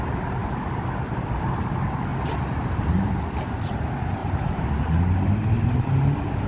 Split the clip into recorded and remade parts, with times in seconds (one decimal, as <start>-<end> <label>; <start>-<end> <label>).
0.0-2.1 recorded; 2.1-3.1 remade; 3.1-4.2 recorded; 4.2-4.7 remade; 4.7-6.5 recorded